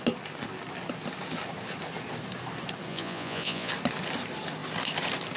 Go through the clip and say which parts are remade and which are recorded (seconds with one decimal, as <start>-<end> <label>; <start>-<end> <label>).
0.0-2.9 recorded; 2.9-3.7 remade; 3.7-5.4 recorded